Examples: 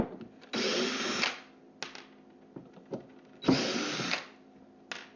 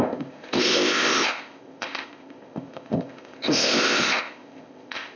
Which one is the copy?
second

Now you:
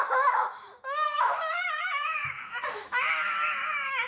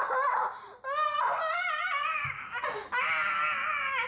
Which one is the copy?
first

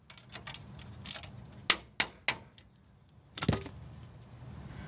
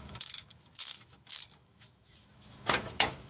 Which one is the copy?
second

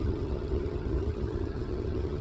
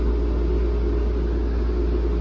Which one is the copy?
first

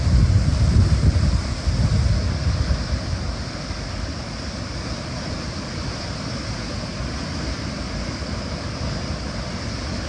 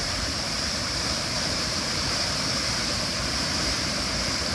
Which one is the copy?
second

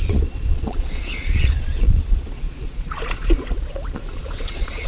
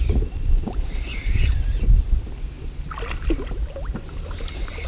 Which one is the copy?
first